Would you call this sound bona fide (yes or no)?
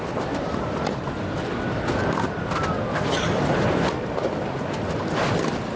yes